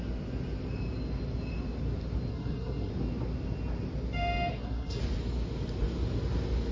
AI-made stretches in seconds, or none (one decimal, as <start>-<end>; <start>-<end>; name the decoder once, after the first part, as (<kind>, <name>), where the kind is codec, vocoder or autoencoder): 2.3-2.9 (codec, SNAC); 4.5-5.0